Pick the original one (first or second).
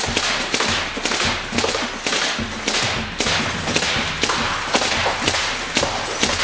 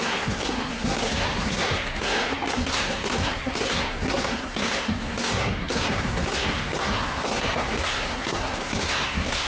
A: first